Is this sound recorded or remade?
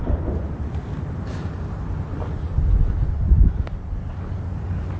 recorded